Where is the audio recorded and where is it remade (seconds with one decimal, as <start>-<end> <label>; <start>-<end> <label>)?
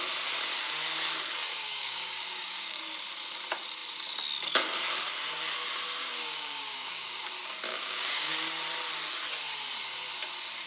0.0-1.5 recorded; 1.5-2.8 remade; 2.8-6.2 recorded; 6.2-7.3 remade; 7.3-7.7 recorded; 7.7-8.3 remade; 8.3-10.7 recorded